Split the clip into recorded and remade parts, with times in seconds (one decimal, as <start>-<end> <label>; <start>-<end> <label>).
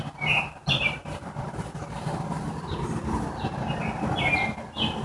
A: 0.0-5.0 recorded